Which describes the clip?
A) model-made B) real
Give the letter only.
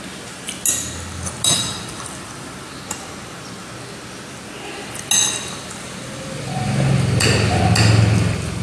B